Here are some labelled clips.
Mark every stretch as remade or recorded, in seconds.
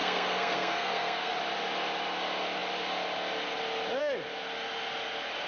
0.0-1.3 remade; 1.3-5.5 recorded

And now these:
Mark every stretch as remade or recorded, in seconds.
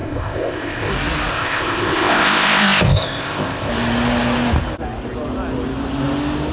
0.0-0.9 remade; 0.9-1.3 recorded; 1.3-3.7 remade; 3.7-6.5 recorded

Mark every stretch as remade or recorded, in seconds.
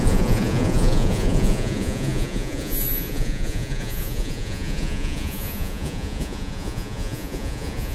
0.0-7.9 remade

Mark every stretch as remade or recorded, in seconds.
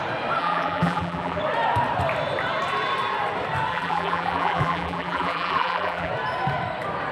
0.0-0.4 recorded; 0.4-1.4 remade; 1.4-3.7 recorded; 3.7-6.1 remade; 6.1-7.1 recorded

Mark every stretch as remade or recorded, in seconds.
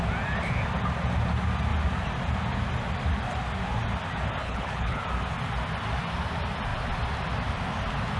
0.0-4.4 recorded; 4.4-5.0 remade; 5.0-8.2 recorded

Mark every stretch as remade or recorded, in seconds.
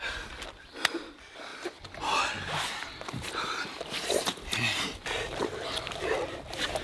0.0-6.8 recorded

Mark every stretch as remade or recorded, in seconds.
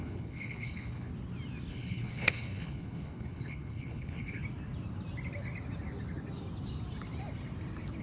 0.0-1.1 remade; 1.1-1.7 recorded; 1.7-4.4 remade; 4.4-8.0 recorded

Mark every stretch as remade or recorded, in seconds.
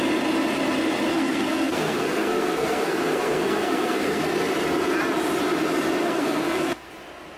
0.0-1.1 recorded; 1.1-4.2 remade; 4.2-6.0 recorded; 6.0-6.9 remade; 6.9-7.4 recorded